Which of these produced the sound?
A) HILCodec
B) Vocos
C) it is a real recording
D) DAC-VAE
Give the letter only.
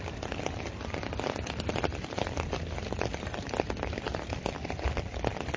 C